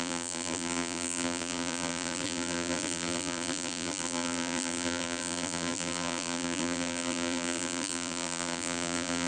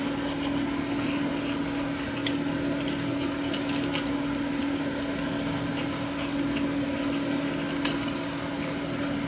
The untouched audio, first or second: second